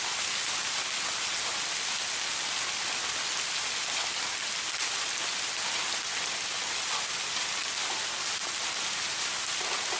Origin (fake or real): real